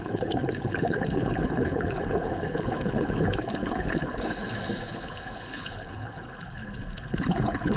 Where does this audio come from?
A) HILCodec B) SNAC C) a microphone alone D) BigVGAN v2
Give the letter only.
A